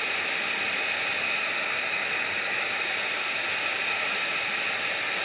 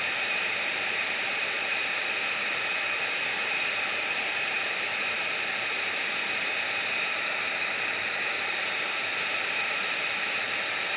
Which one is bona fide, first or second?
first